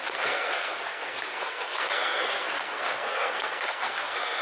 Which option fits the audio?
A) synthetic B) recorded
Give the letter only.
A